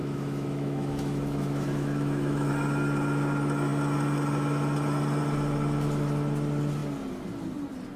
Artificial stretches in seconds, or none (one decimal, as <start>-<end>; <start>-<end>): 0.0-2.5